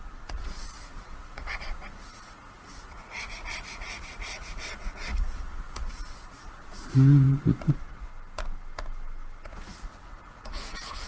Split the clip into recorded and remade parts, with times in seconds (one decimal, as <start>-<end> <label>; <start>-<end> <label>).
0.0-8.1 remade; 8.1-9.5 recorded; 9.5-11.1 remade